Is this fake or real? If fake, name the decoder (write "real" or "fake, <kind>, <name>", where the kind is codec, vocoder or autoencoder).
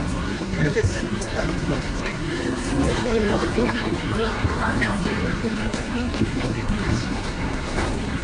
fake, codec, SNAC